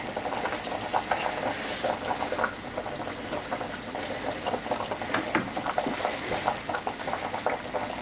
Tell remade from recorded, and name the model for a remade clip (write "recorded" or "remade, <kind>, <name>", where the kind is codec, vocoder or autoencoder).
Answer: recorded